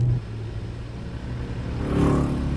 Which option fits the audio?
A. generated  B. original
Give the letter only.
B